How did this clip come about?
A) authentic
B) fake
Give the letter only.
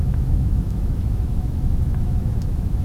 B